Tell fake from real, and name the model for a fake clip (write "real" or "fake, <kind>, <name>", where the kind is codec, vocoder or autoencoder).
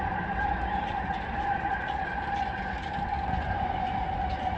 real